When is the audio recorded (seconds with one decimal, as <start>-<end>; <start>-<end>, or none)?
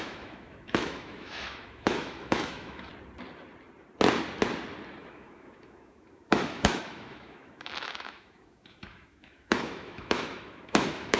2.9-5.0